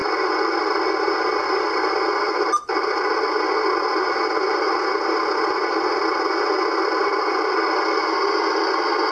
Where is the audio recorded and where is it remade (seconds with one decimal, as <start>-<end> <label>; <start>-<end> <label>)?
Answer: 0.0-9.1 recorded